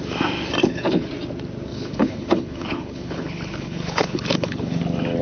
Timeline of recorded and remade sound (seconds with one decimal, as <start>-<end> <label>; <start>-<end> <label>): 0.0-0.6 recorded; 0.6-1.1 remade; 1.1-1.7 recorded; 1.7-4.8 remade; 4.8-5.2 recorded